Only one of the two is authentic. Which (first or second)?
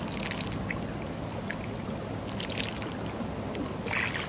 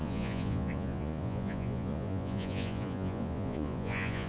first